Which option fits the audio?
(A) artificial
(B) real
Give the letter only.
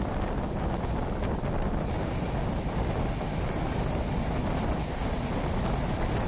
B